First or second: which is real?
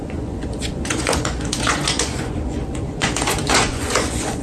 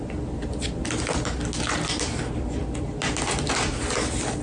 second